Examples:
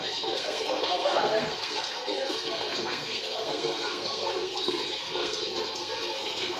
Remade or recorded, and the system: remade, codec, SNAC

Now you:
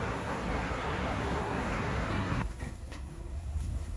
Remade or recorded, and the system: remade, codec, SNAC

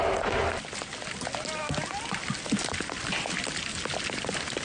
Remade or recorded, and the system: recorded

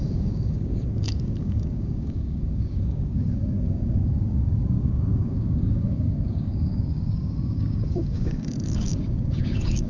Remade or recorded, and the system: remade, codec, DAC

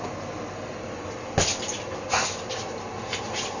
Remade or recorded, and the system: recorded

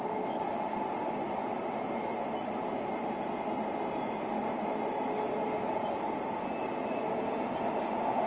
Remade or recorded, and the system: recorded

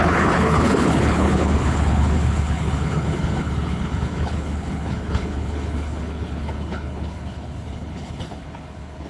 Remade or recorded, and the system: remade, codec, HILCodec